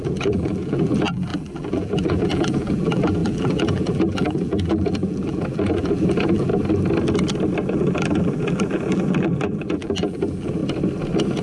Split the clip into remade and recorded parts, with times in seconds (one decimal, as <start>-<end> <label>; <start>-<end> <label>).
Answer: 0.0-6.5 remade; 6.5-7.7 recorded; 7.7-10.6 remade; 10.6-11.4 recorded